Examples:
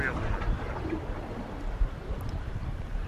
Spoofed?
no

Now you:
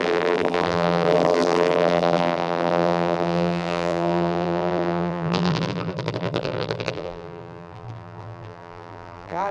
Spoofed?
yes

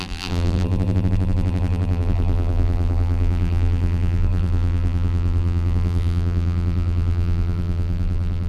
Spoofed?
yes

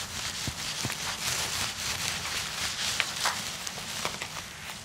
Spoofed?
yes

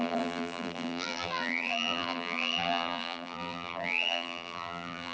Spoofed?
yes